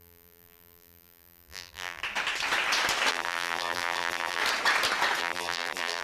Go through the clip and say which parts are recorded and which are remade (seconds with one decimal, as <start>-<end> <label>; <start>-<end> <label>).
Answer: 0.0-2.0 remade; 2.0-3.1 recorded; 3.1-4.4 remade; 4.4-5.2 recorded; 5.2-6.0 remade